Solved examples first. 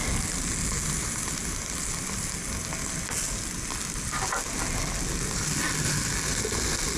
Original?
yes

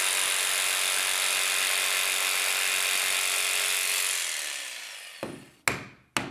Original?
yes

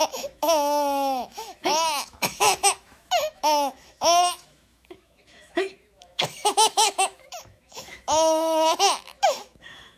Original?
no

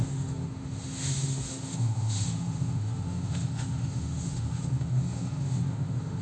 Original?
no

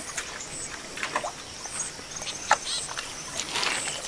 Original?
yes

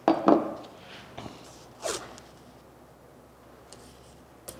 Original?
yes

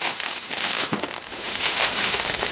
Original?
no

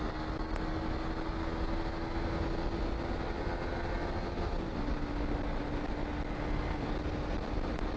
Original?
yes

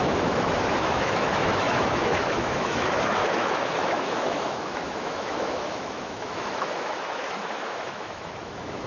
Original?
no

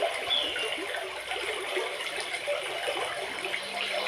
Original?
yes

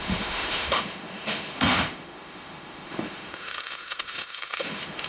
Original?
no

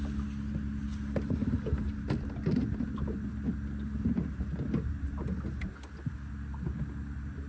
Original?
yes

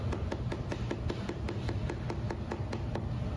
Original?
yes